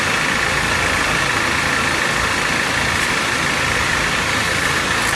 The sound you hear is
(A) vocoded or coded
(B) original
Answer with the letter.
B